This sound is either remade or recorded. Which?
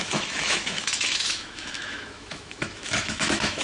remade